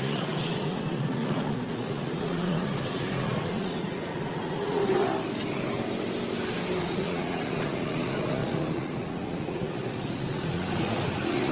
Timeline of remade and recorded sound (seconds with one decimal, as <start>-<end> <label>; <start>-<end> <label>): 0.0-4.8 remade; 4.8-6.8 recorded; 6.8-11.5 remade